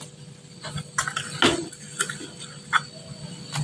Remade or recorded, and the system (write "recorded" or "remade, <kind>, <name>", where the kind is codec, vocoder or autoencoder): recorded